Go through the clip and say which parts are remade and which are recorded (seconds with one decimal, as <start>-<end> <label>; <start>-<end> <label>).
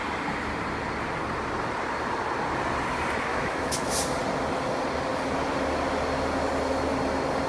0.0-3.3 recorded; 3.3-3.9 remade; 3.9-7.5 recorded